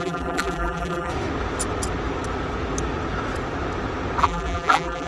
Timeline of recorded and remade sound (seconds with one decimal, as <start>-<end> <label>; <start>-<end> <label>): 0.0-1.1 remade; 1.1-4.2 recorded; 4.2-5.1 remade